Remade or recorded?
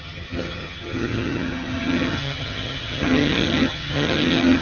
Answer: remade